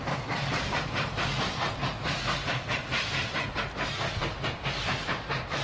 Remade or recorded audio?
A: recorded